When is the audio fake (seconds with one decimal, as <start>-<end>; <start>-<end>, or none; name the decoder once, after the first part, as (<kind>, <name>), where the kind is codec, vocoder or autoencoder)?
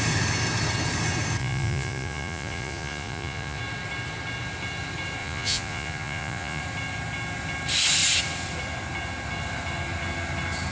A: 1.4-3.6 (vocoder, Vocos); 5.2-6.6